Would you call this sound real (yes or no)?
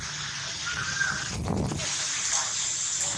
yes